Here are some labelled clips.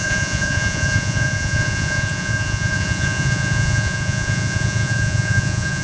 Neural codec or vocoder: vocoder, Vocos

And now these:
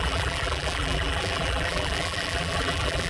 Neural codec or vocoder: vocoder, BigVGAN v2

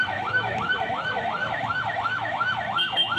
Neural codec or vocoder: autoencoder, DAC-VAE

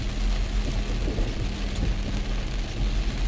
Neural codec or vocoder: none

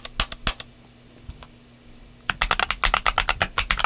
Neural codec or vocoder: none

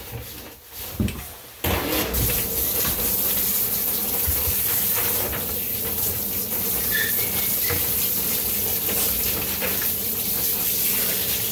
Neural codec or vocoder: none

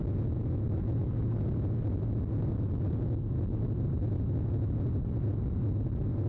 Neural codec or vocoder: none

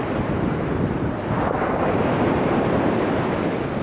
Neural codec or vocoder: vocoder, BigVGAN v2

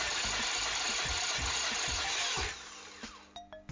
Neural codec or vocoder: none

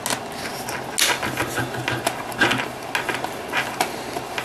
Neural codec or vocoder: none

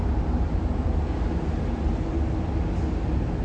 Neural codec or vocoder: none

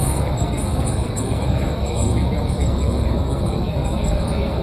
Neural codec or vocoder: codec, SNAC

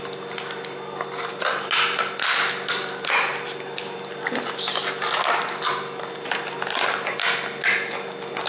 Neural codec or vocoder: none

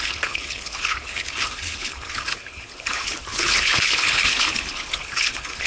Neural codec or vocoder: codec, HILCodec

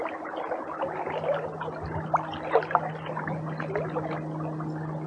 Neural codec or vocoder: none